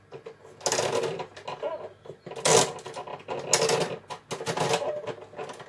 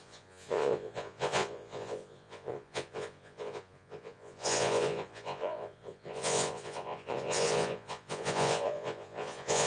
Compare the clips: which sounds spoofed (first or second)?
second